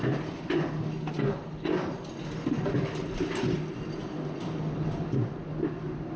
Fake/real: real